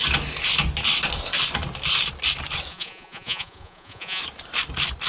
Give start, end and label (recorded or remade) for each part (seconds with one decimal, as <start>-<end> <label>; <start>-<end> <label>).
0.0-2.7 recorded; 2.7-4.2 remade; 4.2-5.1 recorded